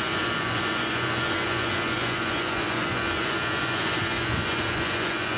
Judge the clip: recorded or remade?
remade